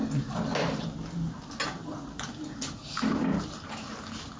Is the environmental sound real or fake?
real